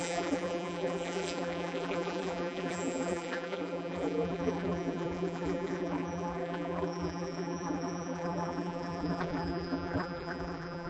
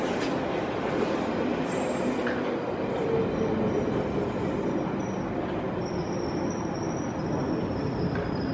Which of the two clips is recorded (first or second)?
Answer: second